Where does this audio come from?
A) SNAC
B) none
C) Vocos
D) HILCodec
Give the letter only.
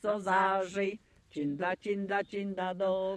C